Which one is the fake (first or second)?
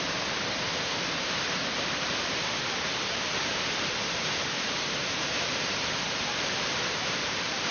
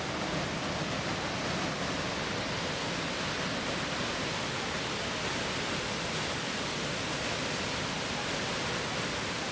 first